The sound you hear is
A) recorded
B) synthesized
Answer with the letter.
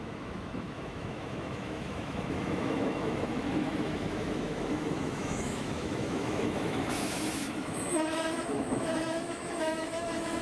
B